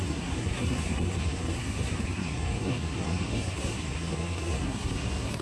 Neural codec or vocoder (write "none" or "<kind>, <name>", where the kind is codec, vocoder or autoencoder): codec, SNAC